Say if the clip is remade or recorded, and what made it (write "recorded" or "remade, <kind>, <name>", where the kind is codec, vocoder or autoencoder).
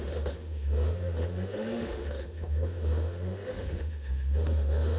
remade, autoencoder, DAC-VAE